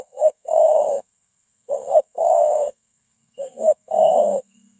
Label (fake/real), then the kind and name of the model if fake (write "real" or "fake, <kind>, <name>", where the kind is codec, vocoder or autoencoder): fake, codec, SNAC